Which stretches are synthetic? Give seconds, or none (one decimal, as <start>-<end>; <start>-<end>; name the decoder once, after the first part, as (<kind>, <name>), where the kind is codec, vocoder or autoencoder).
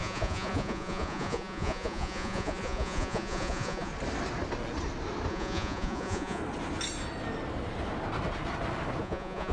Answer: 0.0-3.9 (vocoder, Vocos); 5.3-6.4; 9.0-9.5